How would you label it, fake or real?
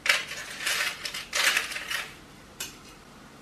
fake